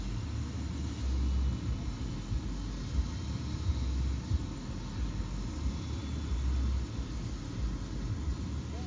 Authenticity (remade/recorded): recorded